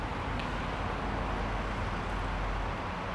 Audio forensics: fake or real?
real